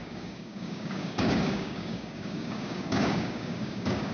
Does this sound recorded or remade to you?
remade